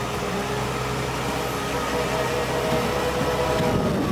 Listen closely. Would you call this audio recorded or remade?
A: recorded